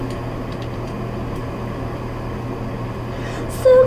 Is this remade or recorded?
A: recorded